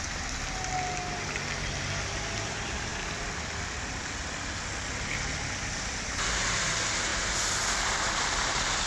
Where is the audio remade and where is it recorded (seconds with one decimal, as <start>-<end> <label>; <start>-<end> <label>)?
0.0-8.9 recorded